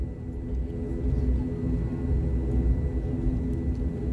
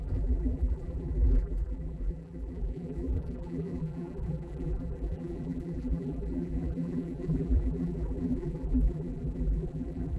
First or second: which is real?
first